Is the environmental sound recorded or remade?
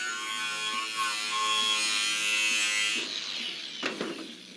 recorded